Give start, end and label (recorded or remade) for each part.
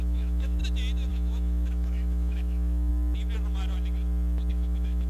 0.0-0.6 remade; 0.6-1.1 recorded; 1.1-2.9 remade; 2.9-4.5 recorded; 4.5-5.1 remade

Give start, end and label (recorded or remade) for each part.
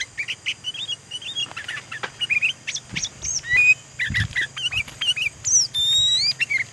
0.0-6.7 recorded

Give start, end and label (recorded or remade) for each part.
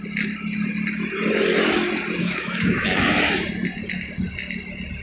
0.0-2.2 recorded; 2.2-3.0 remade; 3.0-5.0 recorded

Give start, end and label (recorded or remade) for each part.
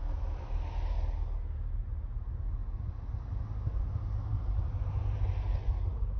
0.0-6.2 recorded